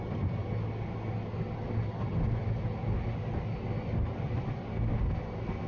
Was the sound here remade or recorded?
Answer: recorded